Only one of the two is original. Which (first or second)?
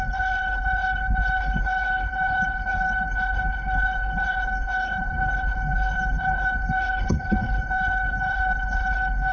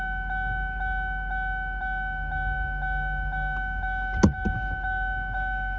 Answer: second